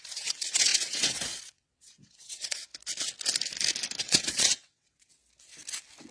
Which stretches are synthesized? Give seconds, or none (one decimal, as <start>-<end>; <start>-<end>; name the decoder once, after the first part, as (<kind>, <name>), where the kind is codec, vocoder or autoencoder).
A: 0.0-2.7 (vocoder, WaveNeXt); 4.0-5.2